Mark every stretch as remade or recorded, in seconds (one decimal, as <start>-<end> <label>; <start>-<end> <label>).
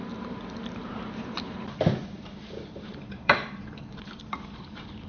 0.0-2.0 recorded; 2.0-5.1 remade